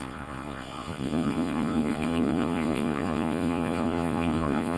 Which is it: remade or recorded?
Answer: remade